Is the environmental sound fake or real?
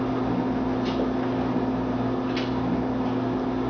real